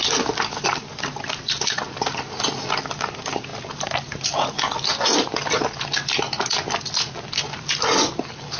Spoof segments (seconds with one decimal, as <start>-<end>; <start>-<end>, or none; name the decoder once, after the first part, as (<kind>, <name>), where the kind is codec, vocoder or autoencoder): none